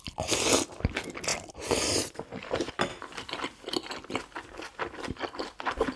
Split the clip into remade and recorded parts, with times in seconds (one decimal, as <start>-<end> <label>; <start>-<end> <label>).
0.0-6.0 recorded